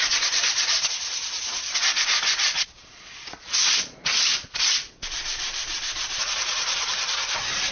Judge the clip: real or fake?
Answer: fake